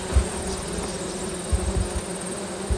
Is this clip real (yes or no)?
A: yes